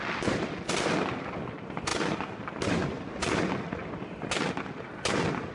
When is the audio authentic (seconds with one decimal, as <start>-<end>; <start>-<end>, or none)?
0.0-5.5